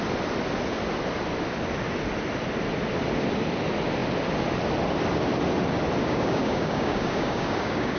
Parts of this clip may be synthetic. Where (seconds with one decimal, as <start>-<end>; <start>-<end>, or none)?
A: 6.0-8.0